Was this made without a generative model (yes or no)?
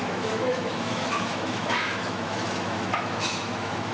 no